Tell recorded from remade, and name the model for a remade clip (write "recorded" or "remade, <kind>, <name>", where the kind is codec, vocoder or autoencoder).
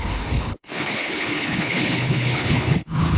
remade, codec, HILCodec